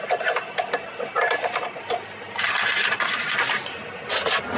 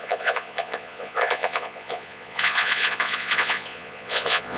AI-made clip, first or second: second